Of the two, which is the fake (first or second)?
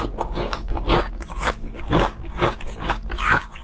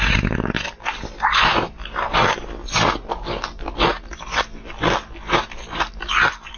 first